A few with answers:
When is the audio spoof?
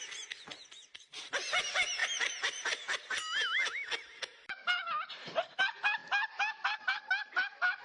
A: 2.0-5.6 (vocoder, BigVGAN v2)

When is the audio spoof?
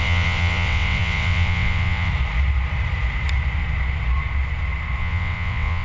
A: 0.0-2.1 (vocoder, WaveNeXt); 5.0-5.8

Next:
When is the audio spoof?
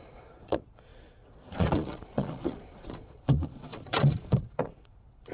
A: 0.0-5.3 (vocoder, Vocos)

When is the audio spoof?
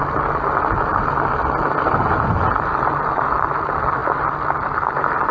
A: none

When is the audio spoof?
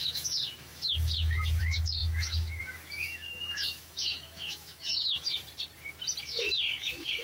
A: 0.0-5.4 (autoencoder, DAC-VAE); 6.2-7.2